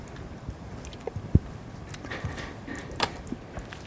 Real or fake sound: real